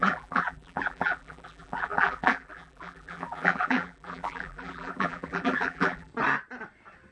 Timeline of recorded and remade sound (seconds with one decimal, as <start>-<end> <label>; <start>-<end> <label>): 0.0-6.1 remade; 6.1-7.1 recorded